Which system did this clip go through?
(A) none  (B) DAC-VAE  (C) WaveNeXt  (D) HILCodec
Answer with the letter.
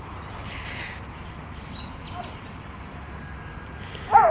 A